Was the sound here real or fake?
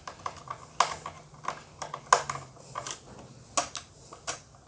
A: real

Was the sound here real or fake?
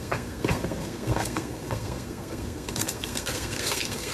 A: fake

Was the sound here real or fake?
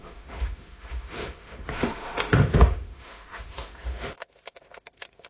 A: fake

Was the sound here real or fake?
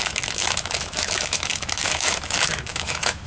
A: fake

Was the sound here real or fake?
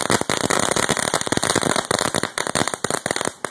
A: real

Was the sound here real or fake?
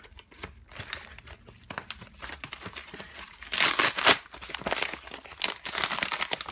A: real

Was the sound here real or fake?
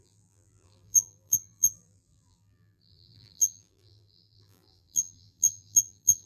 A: fake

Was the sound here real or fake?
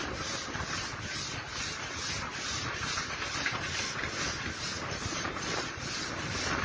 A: real